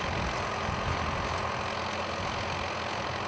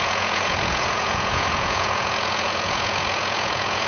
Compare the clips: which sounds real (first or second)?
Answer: first